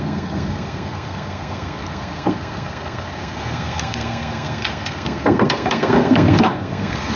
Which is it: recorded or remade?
remade